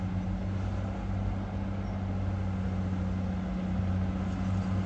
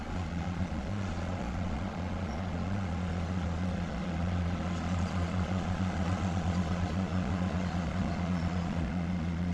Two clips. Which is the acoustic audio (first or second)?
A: first